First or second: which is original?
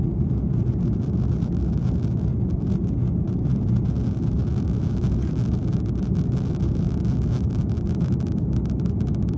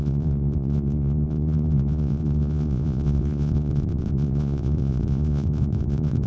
first